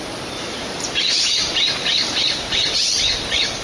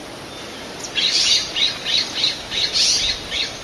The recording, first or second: second